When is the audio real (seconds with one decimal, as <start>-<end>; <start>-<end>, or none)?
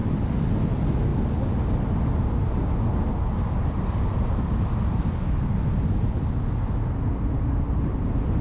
0.0-8.4